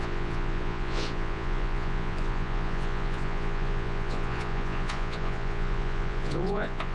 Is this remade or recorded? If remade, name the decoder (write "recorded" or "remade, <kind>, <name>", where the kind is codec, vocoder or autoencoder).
remade, vocoder, Vocos